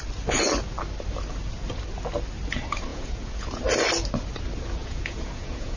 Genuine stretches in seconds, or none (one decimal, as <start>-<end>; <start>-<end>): 0.0-2.9; 3.6-4.8